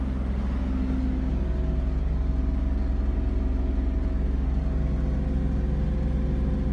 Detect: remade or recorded recorded